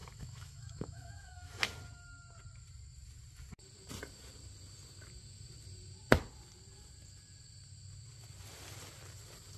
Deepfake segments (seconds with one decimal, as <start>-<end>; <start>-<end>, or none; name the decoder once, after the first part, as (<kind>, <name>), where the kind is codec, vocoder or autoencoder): 0.0-1.5 (autoencoder, DAC-VAE)